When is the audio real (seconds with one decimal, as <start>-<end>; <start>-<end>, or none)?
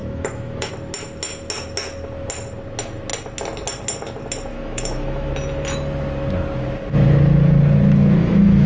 0.7-4.5; 5.3-8.2